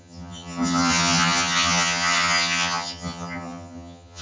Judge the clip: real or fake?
fake